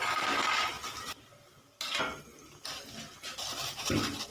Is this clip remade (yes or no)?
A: no